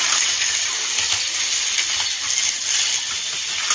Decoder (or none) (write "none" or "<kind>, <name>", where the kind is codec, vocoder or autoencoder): none